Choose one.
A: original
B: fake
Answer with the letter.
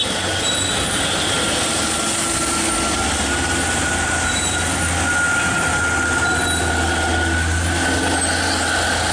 A